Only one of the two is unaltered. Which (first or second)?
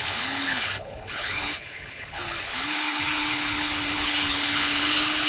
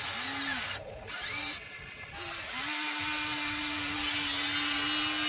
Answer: second